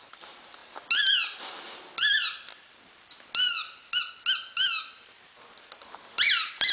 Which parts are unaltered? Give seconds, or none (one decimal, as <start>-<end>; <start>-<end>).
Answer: 0.0-6.7